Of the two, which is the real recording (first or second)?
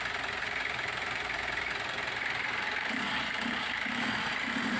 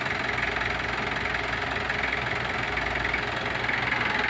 second